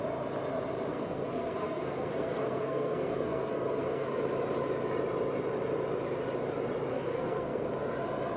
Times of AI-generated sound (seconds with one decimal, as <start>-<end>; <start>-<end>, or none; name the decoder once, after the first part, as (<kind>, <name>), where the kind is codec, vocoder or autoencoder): 0.9-4.2 (codec, SNAC); 6.9-7.7